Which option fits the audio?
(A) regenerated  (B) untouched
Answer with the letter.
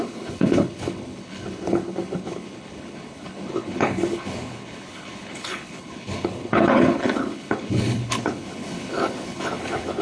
A